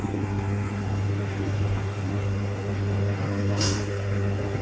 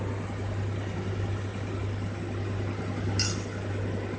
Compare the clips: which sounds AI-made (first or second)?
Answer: first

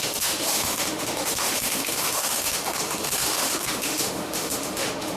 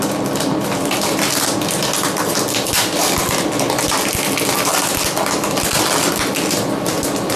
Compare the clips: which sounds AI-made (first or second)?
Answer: first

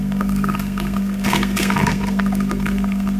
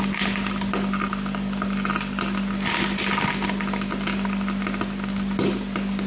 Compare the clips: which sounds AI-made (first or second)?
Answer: first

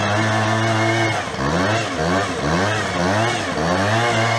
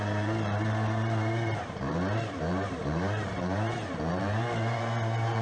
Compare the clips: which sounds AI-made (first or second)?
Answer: second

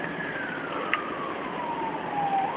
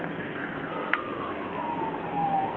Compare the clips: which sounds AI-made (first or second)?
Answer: second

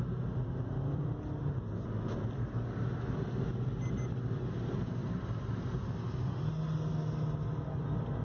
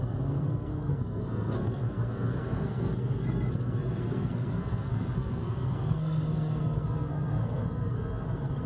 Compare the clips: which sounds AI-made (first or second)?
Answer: second